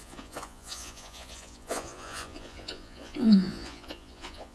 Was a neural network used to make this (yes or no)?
yes